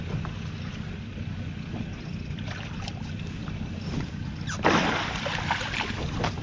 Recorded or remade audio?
recorded